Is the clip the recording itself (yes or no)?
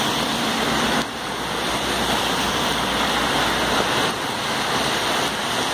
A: yes